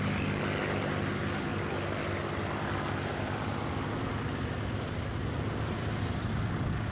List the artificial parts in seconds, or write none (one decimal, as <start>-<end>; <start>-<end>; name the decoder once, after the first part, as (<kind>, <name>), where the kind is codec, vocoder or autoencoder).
none